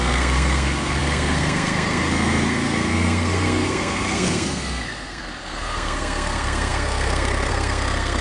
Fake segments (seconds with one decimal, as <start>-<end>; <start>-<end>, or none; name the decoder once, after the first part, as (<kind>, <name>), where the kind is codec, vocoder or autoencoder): 0.0-8.2 (codec, SNAC)